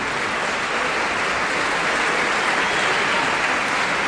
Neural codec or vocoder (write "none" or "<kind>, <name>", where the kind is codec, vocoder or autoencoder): none